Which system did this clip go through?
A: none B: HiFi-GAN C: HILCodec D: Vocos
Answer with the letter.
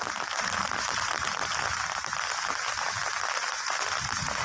A